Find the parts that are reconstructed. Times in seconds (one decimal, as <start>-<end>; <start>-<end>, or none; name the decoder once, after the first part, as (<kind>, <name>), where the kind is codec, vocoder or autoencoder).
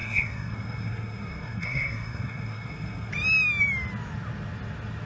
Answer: 0.0-3.1 (codec, SNAC)